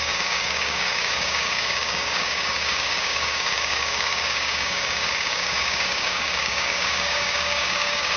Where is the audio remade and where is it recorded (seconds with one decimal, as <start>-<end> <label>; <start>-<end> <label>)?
0.0-8.2 remade